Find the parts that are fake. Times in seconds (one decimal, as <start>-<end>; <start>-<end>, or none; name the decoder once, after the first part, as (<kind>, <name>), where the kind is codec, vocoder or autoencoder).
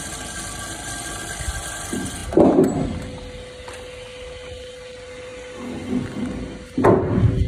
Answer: none